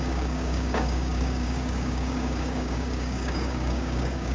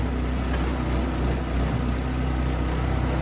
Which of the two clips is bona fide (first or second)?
second